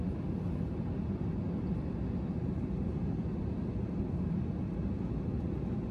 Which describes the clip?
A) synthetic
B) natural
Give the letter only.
B